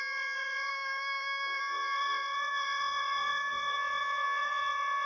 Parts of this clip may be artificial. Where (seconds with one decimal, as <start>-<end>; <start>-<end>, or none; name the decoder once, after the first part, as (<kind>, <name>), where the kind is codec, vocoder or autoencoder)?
0.0-0.7 (vocoder, WaveNeXt); 1.6-5.1